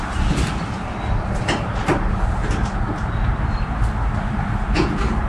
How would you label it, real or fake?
real